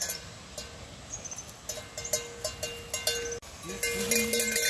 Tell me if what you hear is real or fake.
real